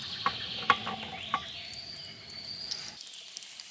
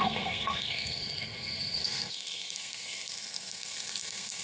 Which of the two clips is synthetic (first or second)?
second